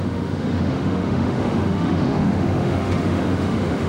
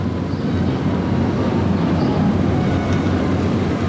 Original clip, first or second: second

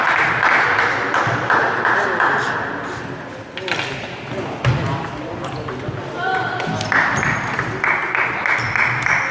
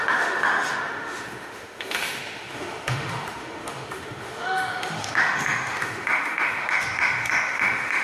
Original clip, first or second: first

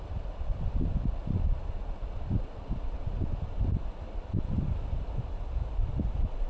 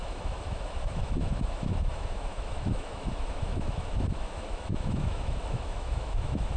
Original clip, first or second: first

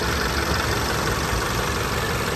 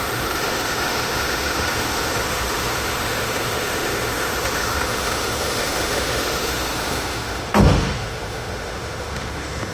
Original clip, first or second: first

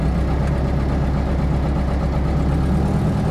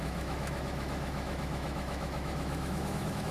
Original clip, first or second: first